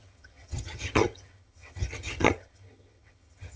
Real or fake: fake